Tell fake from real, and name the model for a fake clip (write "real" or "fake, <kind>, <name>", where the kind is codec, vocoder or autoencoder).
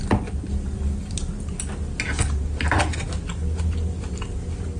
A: real